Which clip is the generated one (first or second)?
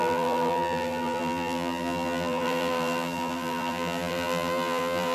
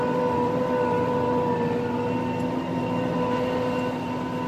first